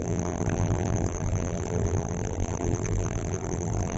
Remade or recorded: remade